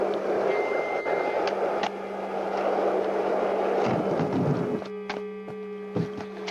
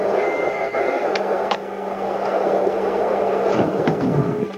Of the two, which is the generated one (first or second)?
second